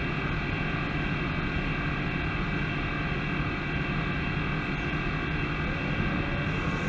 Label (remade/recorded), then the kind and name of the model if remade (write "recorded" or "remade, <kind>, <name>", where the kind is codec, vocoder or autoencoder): recorded